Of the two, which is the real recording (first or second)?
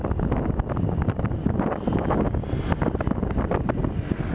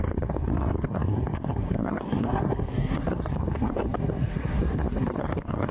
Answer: first